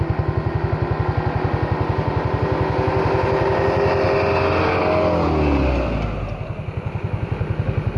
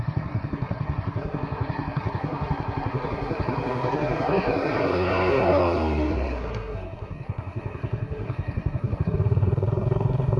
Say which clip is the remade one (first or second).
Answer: second